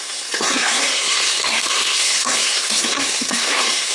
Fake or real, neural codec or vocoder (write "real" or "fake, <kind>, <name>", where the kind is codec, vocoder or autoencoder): fake, codec, SNAC